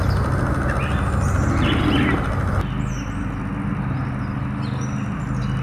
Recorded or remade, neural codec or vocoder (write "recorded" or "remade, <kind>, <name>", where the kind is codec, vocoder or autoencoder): recorded